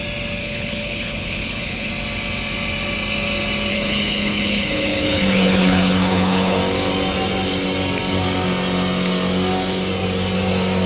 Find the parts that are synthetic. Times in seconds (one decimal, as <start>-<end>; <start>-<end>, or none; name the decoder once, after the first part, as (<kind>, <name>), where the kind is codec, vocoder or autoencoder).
0.4-1.9 (codec, HILCodec); 3.7-6.6